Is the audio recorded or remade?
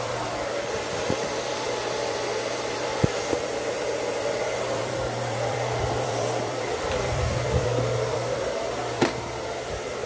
remade